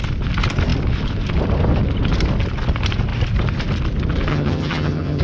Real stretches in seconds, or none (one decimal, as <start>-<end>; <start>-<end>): 0.0-4.3